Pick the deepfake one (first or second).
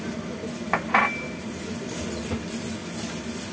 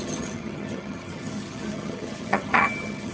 second